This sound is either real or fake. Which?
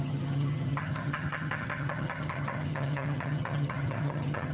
fake